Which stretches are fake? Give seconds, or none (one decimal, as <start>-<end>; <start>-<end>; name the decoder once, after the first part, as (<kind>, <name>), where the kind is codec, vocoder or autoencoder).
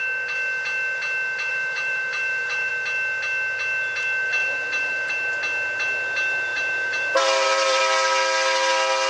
1.5-2.7 (vocoder, BigVGAN v2); 4.4-5.1; 6.5-7.8